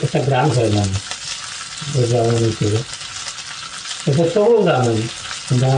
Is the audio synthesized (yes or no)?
no